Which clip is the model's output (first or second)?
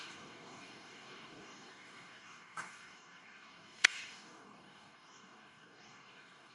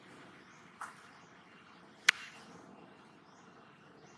first